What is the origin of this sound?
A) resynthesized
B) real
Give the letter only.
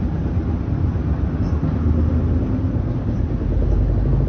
B